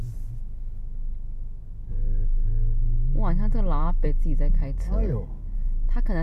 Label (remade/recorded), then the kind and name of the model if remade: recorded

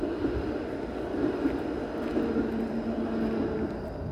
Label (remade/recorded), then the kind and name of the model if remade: recorded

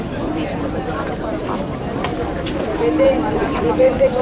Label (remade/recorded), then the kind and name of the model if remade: remade, vocoder, BigVGAN v2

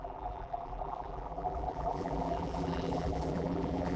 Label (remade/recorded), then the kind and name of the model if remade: remade, vocoder, BigVGAN v2